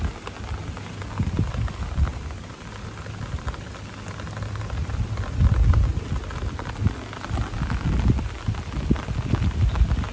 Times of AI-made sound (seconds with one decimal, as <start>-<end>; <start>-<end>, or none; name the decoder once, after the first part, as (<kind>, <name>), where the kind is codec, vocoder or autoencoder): 2.1-2.7 (vocoder, BigVGAN v2)